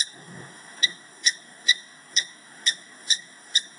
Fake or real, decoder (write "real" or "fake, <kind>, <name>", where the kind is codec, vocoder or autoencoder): fake, codec, SNAC